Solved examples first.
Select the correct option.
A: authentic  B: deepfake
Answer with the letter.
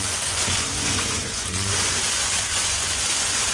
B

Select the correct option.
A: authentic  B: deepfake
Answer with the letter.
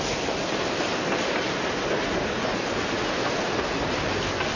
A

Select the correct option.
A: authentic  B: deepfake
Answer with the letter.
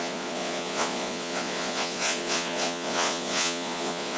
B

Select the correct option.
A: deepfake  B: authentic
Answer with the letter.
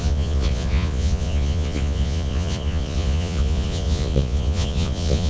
A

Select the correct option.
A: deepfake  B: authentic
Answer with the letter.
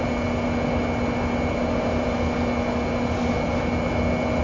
B